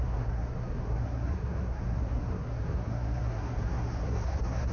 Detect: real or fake fake